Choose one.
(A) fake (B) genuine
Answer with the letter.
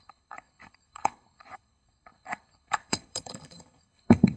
A